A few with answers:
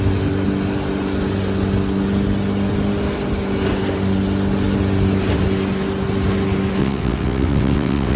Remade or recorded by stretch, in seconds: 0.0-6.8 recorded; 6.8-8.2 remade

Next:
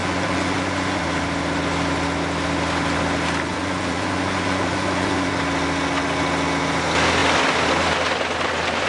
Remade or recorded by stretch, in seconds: 0.0-1.0 remade; 1.0-3.5 recorded; 3.5-5.4 remade; 5.4-8.9 recorded

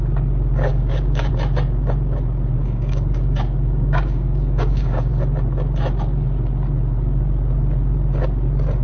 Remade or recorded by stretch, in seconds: 0.0-0.7 recorded; 0.7-1.3 remade; 1.3-2.6 recorded; 2.6-5.1 remade; 5.1-8.8 recorded

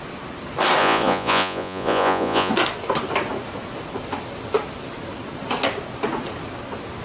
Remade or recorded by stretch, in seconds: 0.0-0.8 recorded; 0.8-2.5 remade; 2.5-7.0 recorded

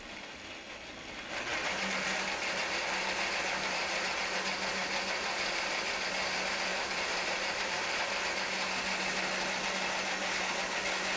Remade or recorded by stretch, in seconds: 0.0-6.7 recorded; 6.7-8.0 remade; 8.0-11.2 recorded

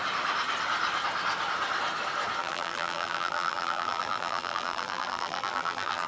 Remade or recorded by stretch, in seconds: 0.0-2.4 recorded; 2.4-6.1 remade

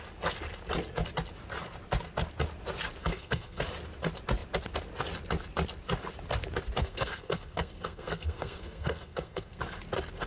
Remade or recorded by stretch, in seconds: 0.0-3.0 recorded; 3.0-3.6 remade; 3.6-6.8 recorded; 6.8-9.6 remade; 9.6-10.3 recorded